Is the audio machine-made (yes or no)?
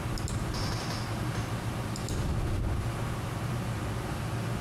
no